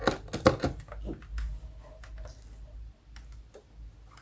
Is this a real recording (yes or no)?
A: yes